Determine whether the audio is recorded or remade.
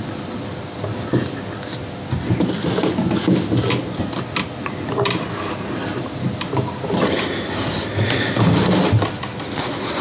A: recorded